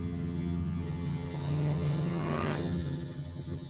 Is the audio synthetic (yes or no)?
yes